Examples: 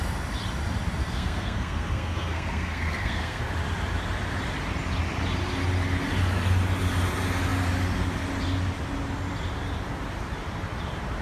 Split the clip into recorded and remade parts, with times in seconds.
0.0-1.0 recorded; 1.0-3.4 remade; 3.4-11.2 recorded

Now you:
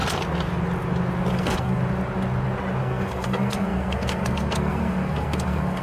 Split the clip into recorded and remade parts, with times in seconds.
0.0-1.3 recorded; 1.3-1.8 remade; 1.8-2.8 recorded; 2.8-5.8 remade

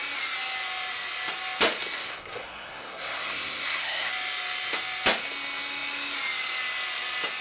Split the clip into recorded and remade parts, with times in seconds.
0.0-2.0 recorded; 2.0-4.1 remade; 4.1-7.4 recorded

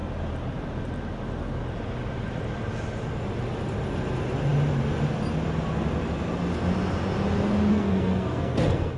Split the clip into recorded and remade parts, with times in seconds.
0.0-7.7 recorded; 7.7-9.0 remade